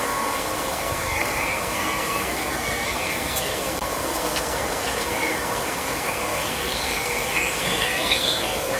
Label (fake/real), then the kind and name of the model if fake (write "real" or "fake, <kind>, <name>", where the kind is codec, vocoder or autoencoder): fake, codec, SNAC